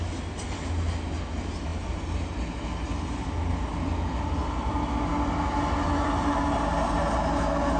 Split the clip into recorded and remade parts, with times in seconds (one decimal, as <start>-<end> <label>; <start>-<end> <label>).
0.0-7.8 recorded